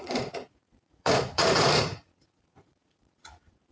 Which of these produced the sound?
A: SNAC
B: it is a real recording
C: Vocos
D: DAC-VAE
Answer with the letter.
C